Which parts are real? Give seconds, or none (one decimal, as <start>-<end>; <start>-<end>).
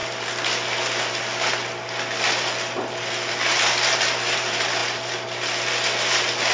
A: 0.0-6.5